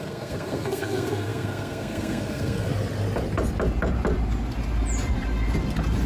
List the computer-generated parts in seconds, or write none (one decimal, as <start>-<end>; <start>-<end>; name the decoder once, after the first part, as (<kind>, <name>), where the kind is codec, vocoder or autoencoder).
0.0-2.7 (codec, SNAC)